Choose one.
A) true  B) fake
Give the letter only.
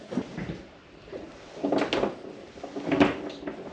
A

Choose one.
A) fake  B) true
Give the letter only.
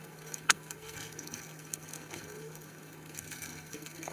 A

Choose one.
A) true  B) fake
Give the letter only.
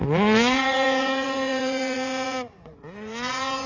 B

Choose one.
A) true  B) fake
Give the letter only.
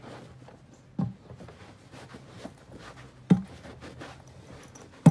A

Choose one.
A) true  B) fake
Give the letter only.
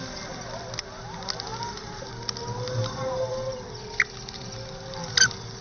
A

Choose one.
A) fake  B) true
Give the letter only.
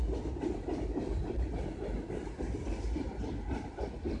B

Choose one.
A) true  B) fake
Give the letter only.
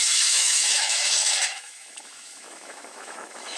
B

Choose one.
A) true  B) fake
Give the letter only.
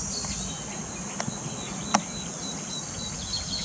A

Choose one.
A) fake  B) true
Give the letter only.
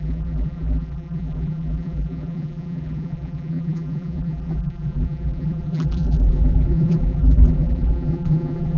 A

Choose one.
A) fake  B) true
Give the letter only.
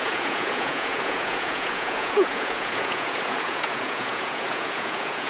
A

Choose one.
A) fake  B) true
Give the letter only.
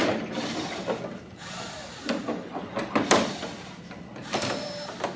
A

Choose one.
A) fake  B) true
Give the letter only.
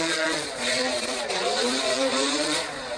A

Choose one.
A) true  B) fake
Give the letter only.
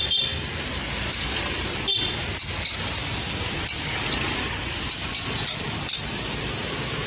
A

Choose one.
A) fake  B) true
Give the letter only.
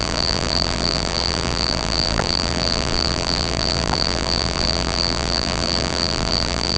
A